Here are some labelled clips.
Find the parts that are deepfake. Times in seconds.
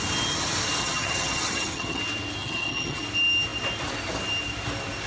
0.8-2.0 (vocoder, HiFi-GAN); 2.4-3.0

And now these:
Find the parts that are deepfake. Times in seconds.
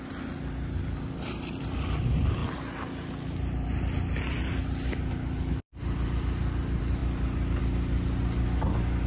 none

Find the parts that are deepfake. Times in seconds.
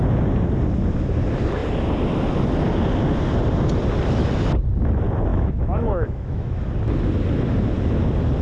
5.3-6.6 (autoencoder, DAC-VAE)